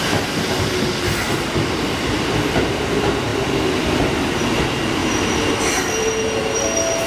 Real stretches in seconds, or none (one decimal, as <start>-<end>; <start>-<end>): 0.0-7.1